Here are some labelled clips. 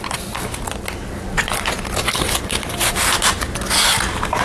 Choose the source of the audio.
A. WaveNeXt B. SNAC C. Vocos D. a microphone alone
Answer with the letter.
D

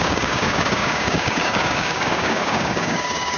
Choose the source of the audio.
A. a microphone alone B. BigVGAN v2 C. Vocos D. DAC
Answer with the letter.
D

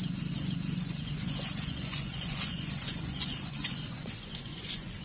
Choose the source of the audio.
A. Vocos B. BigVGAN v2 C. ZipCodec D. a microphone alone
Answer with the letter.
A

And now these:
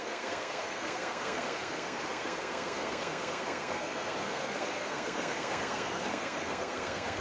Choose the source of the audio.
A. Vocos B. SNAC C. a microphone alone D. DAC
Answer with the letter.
B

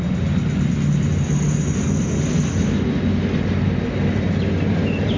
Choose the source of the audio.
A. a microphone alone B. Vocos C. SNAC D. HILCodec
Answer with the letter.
A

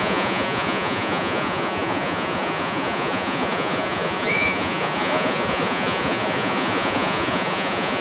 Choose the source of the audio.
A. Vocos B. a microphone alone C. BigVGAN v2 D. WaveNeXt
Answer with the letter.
A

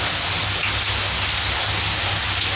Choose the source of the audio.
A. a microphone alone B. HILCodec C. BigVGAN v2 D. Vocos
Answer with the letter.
A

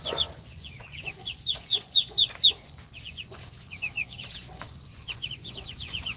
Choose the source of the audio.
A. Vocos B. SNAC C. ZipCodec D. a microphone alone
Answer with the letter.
A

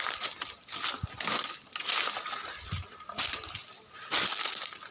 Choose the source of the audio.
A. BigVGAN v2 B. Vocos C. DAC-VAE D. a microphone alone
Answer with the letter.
D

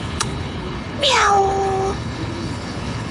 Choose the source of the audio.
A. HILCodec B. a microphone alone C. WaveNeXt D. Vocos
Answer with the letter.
A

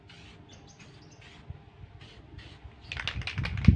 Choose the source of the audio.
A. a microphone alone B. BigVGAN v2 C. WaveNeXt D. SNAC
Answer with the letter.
A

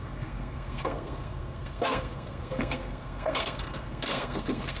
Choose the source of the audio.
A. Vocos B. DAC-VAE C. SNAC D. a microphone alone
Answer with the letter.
C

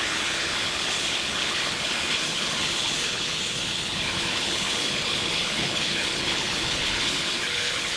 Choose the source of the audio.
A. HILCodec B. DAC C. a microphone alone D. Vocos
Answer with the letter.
A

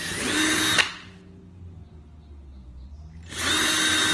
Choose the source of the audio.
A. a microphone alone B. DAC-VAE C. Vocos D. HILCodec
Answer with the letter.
A